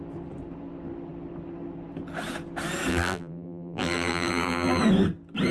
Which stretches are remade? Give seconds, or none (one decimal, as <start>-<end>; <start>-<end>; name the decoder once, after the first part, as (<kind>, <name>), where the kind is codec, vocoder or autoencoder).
2.9-4.8 (vocoder, BigVGAN v2)